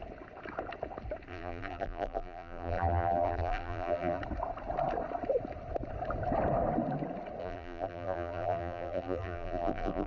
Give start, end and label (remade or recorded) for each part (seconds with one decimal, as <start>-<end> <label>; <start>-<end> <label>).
0.0-1.3 recorded; 1.3-4.2 remade; 4.2-7.4 recorded; 7.4-10.1 remade